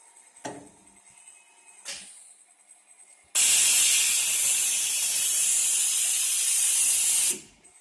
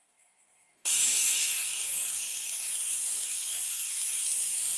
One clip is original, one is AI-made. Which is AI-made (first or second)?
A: second